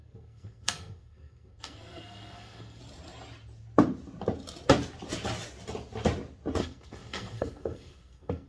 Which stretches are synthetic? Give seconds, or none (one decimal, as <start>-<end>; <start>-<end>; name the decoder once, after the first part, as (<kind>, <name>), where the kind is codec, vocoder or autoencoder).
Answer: 0.0-2.8 (codec, SNAC); 6.6-8.5